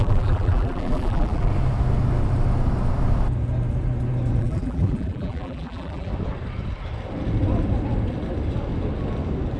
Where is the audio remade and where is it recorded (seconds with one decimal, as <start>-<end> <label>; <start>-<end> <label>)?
0.0-1.5 remade; 1.5-4.4 recorded; 4.4-6.1 remade; 6.1-9.6 recorded